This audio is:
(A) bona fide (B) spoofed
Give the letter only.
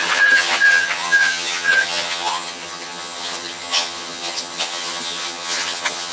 B